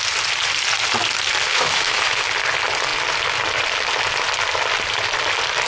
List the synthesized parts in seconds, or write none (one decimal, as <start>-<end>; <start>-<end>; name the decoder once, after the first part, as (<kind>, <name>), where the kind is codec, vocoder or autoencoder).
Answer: 1.5-2.3 (autoencoder, DAC-VAE)